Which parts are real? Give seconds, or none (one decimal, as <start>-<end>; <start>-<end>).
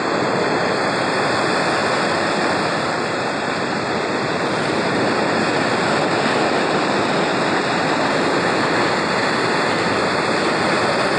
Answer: 0.0-1.8; 5.5-11.2